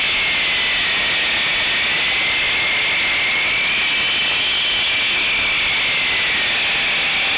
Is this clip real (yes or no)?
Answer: yes